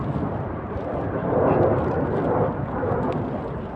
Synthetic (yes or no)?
no